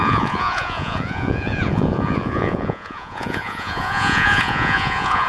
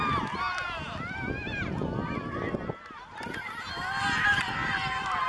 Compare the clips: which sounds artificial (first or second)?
first